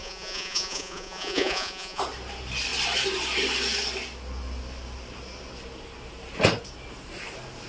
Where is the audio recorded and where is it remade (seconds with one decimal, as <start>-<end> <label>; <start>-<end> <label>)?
0.0-2.0 remade; 2.0-7.7 recorded